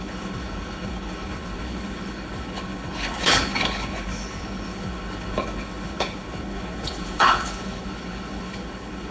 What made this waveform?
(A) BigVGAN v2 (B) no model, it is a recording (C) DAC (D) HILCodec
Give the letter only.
D